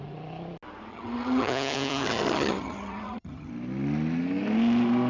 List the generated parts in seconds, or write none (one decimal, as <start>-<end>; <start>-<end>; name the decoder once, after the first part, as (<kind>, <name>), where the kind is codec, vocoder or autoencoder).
0.9-3.5 (vocoder, HiFi-GAN)